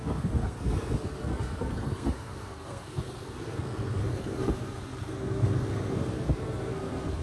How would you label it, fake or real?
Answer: fake